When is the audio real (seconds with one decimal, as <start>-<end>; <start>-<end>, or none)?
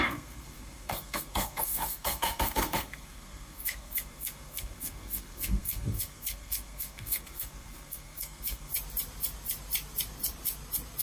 8.7-11.0